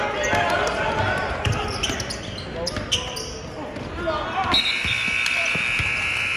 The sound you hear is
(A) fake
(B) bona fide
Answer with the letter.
B